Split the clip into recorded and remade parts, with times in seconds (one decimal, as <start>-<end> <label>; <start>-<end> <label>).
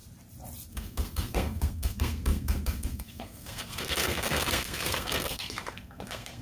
0.0-0.7 recorded; 0.7-6.4 remade